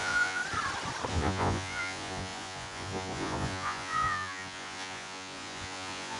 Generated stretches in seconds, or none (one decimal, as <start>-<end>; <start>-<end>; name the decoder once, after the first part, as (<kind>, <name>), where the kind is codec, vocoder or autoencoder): 0.0-0.4 (vocoder, Vocos); 1.1-6.2